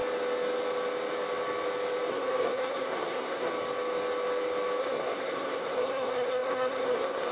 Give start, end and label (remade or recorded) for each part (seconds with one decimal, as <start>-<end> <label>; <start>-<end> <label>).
0.0-2.1 recorded; 2.1-3.5 remade; 3.5-4.8 recorded; 4.8-7.3 remade